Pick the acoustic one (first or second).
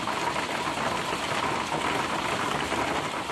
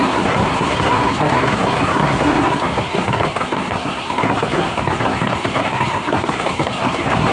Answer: first